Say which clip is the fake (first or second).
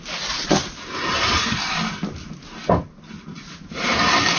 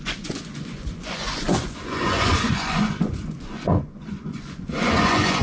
second